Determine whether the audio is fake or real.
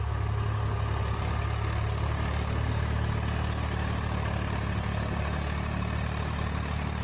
real